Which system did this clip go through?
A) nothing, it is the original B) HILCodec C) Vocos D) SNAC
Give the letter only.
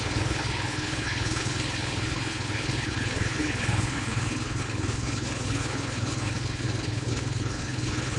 B